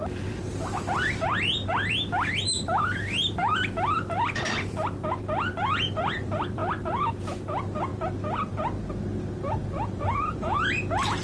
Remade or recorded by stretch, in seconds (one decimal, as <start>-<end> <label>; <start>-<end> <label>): 0.0-7.9 remade; 7.9-9.7 recorded; 9.7-11.2 remade